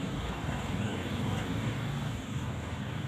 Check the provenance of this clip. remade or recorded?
remade